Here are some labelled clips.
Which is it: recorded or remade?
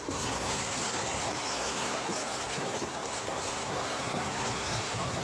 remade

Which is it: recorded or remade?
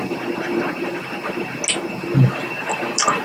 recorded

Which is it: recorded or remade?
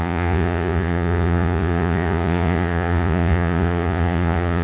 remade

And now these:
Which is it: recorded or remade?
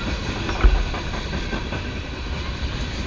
recorded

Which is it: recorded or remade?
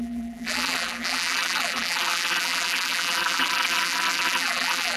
remade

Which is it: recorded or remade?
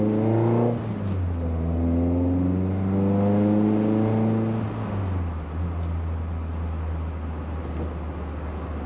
recorded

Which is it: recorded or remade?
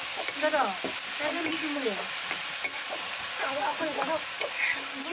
recorded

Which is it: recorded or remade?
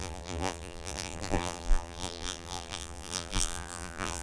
remade